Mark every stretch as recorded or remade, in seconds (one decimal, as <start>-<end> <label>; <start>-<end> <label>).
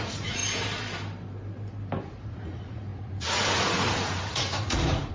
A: 0.0-0.4 remade; 0.4-2.0 recorded; 2.0-5.1 remade